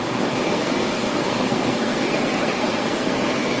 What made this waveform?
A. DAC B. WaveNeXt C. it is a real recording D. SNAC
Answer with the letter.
D